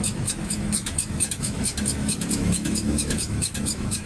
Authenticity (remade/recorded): remade